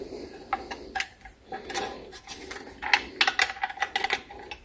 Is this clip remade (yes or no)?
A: no